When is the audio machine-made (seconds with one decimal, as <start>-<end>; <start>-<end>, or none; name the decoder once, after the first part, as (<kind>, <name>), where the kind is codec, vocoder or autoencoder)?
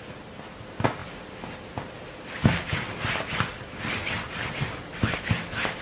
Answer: none